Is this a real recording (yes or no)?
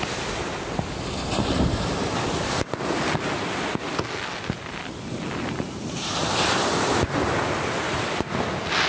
yes